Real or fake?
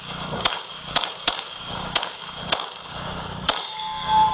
fake